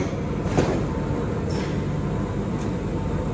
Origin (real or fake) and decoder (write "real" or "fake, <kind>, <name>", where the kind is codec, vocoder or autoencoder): real